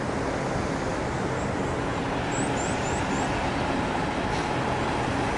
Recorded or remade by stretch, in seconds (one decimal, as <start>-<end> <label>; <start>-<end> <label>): 0.0-0.9 recorded; 0.9-4.1 remade; 4.1-5.4 recorded